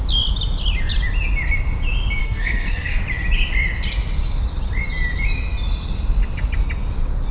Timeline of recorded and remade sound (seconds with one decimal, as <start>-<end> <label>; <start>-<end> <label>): 0.0-2.2 recorded; 2.2-3.0 remade; 3.0-7.3 recorded